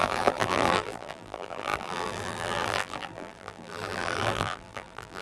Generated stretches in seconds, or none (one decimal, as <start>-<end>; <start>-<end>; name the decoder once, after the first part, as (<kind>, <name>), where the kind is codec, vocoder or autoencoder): 0.0-5.2 (vocoder, BigVGAN v2)